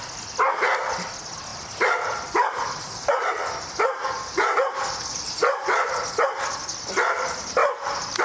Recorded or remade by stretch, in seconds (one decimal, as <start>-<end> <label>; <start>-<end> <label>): 0.0-1.5 recorded; 1.5-6.4 remade; 6.4-7.6 recorded; 7.6-8.2 remade